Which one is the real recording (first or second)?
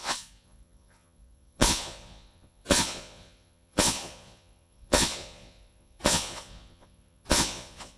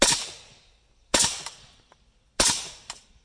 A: second